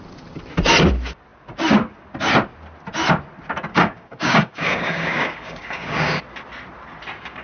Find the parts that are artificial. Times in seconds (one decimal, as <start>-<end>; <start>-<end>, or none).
3.7-6.2